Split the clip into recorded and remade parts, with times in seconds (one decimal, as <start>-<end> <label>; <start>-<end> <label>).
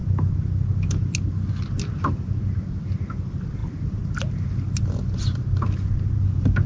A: 0.0-6.7 recorded